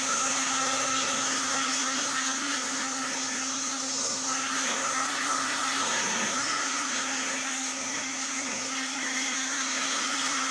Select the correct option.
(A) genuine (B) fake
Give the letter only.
B